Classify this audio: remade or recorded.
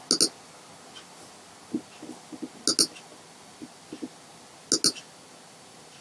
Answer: recorded